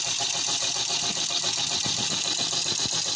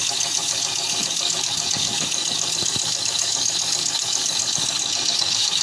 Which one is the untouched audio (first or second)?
first